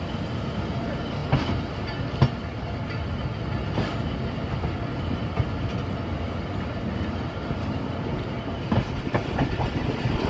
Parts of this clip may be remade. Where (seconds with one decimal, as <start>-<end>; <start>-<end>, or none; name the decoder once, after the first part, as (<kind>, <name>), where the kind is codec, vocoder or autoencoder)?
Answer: none